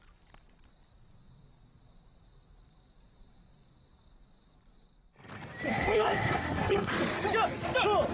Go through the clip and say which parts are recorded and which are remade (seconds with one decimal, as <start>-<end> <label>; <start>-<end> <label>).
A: 0.0-5.7 recorded; 5.7-6.9 remade; 6.9-8.1 recorded

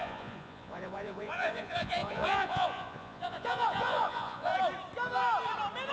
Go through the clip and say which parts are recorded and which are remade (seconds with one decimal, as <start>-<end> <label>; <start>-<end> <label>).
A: 0.0-4.5 remade; 4.5-5.9 recorded

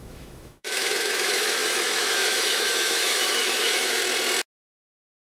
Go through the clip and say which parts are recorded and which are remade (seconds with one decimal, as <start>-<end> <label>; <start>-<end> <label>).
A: 0.0-4.0 remade; 4.0-4.9 recorded; 4.9-5.4 remade

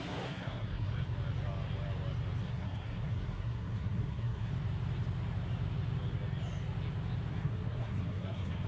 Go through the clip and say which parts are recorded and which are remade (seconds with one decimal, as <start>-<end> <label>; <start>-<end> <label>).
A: 0.0-0.9 remade; 0.9-2.4 recorded; 2.4-4.5 remade; 4.5-7.3 recorded; 7.3-8.7 remade